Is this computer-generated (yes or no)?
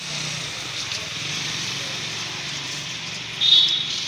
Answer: yes